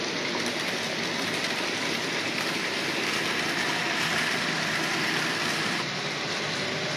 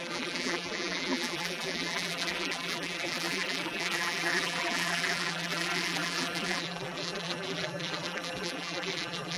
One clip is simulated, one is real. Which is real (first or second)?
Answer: first